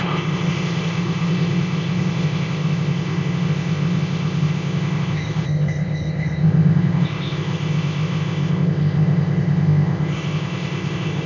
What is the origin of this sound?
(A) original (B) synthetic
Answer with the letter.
B